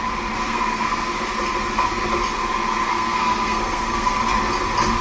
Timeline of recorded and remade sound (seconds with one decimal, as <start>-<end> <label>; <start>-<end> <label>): 0.0-0.5 recorded; 0.5-1.1 remade; 1.1-2.9 recorded; 2.9-4.2 remade; 4.2-5.0 recorded